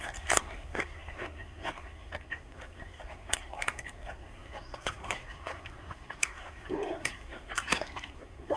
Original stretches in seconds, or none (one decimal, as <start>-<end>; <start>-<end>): none